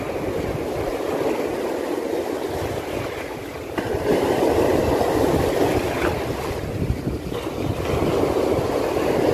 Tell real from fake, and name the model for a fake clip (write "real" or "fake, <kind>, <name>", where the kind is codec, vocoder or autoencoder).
real